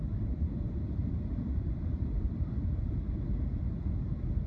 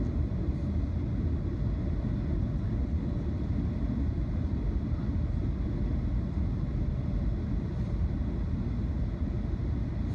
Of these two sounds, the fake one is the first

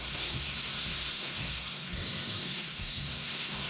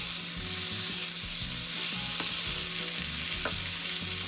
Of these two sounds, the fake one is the first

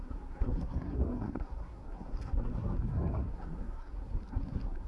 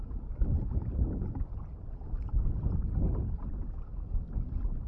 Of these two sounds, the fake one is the first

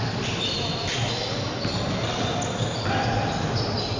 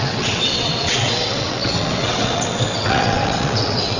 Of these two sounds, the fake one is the second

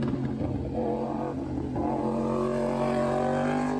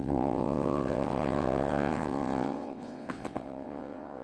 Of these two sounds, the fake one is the second